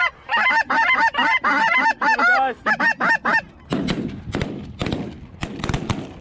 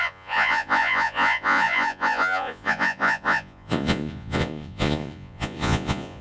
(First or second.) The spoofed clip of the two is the second